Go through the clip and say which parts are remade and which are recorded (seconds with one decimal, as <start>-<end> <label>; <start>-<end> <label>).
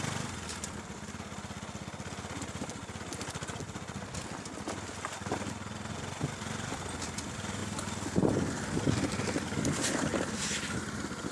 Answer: 0.0-11.3 recorded